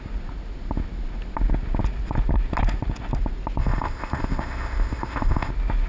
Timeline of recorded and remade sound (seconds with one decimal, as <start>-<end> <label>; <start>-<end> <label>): 0.0-3.6 recorded; 3.6-5.5 remade; 5.5-5.9 recorded